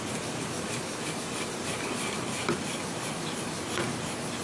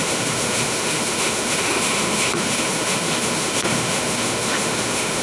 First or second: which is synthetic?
second